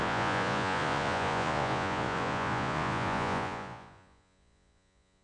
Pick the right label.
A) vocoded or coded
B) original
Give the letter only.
A